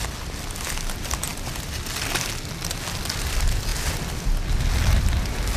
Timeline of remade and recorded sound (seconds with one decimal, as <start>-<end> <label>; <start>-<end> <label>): 0.0-5.6 recorded